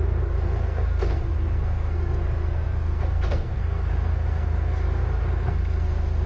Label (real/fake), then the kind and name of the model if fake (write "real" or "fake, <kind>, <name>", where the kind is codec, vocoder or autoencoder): fake, codec, SNAC